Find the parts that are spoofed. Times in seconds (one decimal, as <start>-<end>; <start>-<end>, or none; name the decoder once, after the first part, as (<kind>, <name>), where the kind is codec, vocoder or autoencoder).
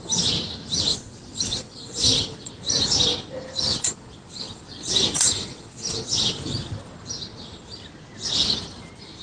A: 0.9-2.5 (vocoder, WaveNeXt); 3.7-6.4